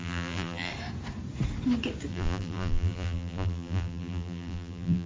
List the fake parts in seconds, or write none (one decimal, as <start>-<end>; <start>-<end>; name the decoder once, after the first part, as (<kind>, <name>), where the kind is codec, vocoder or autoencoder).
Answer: 0.0-0.7 (vocoder, BigVGAN v2); 2.1-5.1